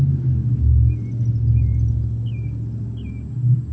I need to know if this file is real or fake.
real